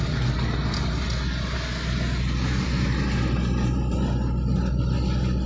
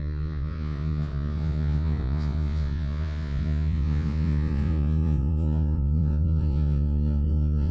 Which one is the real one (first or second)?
first